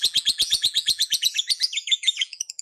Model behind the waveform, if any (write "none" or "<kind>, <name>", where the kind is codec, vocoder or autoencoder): vocoder, BigVGAN v2